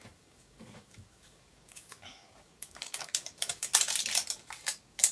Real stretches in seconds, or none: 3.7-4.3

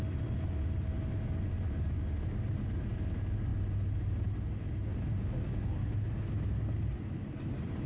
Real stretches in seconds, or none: 0.0-7.9

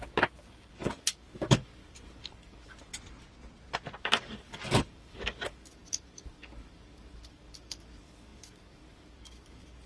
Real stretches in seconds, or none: 2.9-4.0

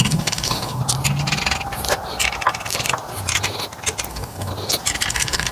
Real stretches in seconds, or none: 0.8-4.1; 4.5-5.1

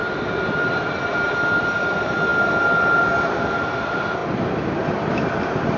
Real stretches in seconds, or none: 0.0-5.8